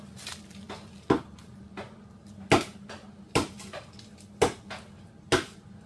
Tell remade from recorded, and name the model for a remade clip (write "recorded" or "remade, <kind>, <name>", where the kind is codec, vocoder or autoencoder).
recorded